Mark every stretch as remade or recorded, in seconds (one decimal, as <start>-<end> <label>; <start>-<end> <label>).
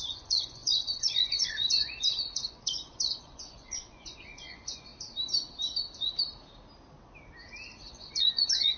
0.0-4.9 remade; 4.9-7.9 recorded; 7.9-8.8 remade